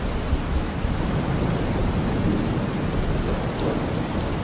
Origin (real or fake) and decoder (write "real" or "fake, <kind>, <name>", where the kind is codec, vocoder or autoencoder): real